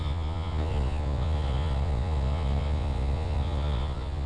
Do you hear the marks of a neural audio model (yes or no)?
yes